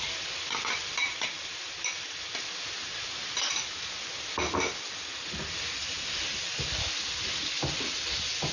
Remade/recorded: recorded